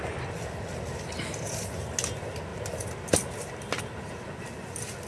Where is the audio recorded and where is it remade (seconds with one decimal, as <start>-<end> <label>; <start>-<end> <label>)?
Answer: 0.0-5.1 recorded